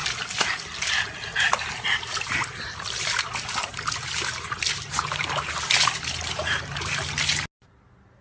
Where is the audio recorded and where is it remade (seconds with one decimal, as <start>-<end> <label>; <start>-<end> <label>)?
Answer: 0.0-8.2 recorded

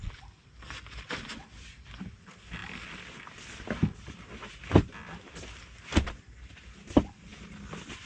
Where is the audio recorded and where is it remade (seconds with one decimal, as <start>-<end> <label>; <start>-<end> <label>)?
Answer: 0.0-8.1 recorded